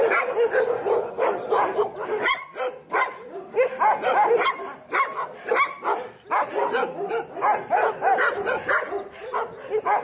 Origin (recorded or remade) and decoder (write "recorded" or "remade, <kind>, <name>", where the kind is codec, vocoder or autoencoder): recorded